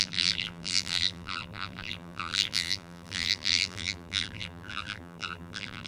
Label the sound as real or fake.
fake